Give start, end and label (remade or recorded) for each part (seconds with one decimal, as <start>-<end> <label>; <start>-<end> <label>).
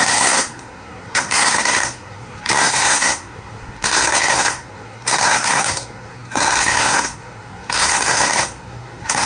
0.0-9.3 remade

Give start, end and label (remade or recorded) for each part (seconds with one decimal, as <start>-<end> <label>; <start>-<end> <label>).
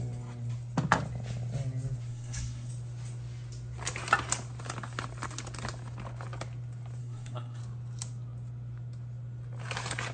0.0-2.1 recorded; 2.1-2.7 remade; 2.7-7.0 recorded; 7.0-7.6 remade; 7.6-10.1 recorded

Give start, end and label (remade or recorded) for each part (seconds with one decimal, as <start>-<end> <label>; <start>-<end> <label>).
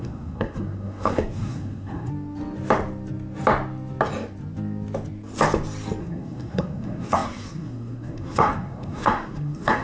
0.0-2.1 remade; 2.1-6.0 recorded; 6.0-9.8 remade